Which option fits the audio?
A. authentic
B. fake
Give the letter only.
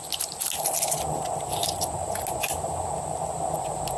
A